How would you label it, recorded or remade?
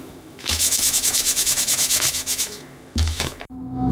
remade